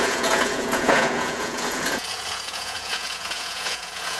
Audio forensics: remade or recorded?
remade